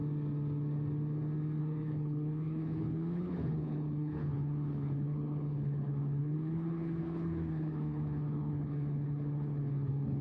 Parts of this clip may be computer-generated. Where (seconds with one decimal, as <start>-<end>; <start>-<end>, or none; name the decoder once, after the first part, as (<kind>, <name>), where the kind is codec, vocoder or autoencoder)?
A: 1.6-10.2 (codec, HILCodec)

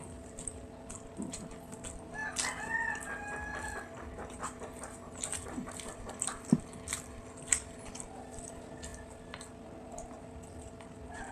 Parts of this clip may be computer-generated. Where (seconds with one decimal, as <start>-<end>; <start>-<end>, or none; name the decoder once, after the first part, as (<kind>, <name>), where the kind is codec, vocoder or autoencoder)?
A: 0.0-2.2 (vocoder, BigVGAN v2); 5.7-8.9; 9.5-11.3

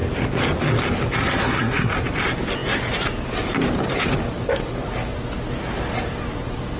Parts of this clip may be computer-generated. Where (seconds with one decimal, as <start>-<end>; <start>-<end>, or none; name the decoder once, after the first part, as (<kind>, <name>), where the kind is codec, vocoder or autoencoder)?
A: 1.2-1.9 (codec, SNAC)

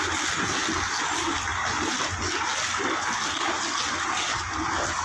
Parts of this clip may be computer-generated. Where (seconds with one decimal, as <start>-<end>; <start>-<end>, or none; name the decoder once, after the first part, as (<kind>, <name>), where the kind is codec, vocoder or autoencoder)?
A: none

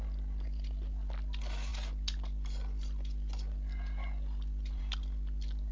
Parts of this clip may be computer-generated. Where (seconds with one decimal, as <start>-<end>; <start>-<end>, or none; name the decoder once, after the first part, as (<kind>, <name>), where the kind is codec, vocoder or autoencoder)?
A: none

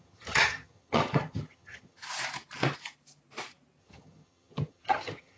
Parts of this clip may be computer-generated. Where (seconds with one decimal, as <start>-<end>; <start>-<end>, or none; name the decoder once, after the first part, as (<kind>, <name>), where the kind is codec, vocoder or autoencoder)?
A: 0.0-2.0 (vocoder, HiFi-GAN); 3.8-5.4

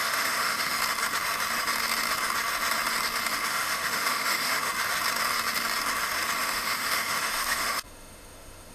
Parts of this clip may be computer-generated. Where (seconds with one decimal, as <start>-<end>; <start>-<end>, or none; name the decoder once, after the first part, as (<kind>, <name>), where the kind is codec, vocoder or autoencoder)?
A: 0.0-0.8 (autoencoder, DAC-VAE); 3.5-4.7; 6.4-8.7